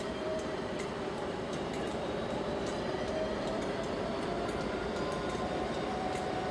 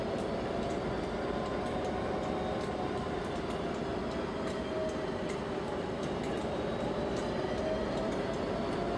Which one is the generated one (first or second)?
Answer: first